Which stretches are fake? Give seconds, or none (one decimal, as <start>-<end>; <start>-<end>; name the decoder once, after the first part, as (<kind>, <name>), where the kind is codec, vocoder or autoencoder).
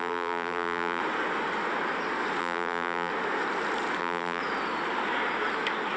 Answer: 0.0-1.0 (vocoder, BigVGAN v2); 2.4-3.1; 4.0-4.4